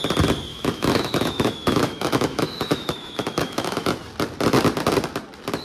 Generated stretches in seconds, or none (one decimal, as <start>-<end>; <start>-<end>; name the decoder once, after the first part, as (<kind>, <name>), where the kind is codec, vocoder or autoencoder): 0.5-3.9 (autoencoder, DAC-VAE)